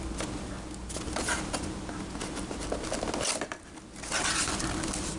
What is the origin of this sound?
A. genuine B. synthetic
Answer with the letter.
A